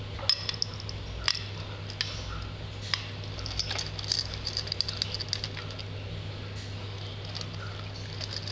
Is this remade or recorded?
recorded